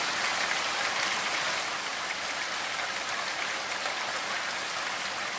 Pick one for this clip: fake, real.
real